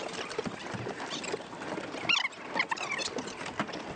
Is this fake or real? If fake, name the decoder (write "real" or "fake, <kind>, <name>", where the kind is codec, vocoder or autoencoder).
real